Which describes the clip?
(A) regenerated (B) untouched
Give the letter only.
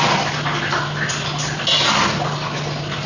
B